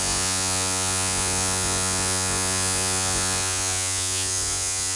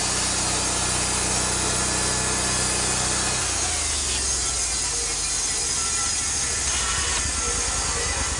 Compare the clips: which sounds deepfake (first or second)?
first